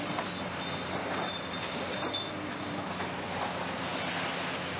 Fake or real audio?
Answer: real